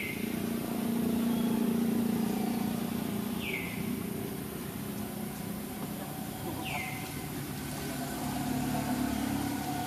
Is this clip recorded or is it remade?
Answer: recorded